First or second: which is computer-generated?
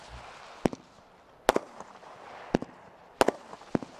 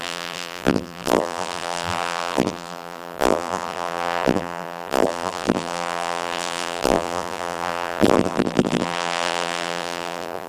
second